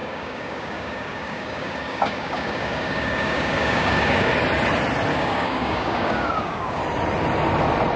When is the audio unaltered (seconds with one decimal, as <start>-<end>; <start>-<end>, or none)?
4.3-5.1; 6.8-8.0